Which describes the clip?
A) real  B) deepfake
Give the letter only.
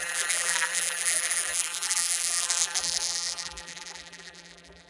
B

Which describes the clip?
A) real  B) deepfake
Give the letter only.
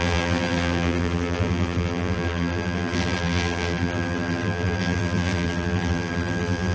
B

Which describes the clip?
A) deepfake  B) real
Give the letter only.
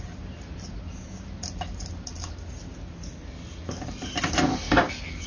B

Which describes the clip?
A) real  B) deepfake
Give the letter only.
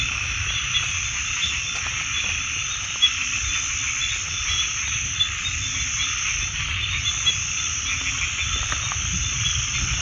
A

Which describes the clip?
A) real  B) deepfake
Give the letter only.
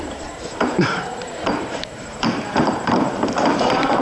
B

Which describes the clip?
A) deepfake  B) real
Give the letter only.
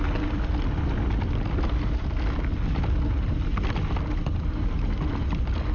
B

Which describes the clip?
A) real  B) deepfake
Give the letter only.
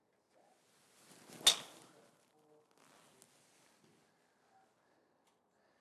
A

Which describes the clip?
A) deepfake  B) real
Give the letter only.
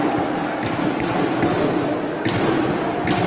B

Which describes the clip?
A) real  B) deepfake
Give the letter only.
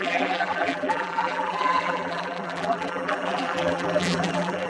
B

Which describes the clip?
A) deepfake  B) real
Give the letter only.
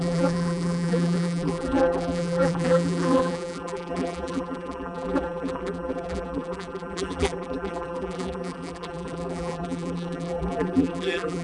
A